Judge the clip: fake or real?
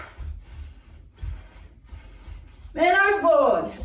real